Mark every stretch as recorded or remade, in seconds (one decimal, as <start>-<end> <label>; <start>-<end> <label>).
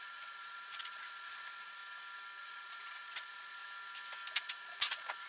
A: 0.0-1.8 remade; 1.8-2.4 recorded; 2.4-3.6 remade; 3.6-4.4 recorded; 4.4-5.3 remade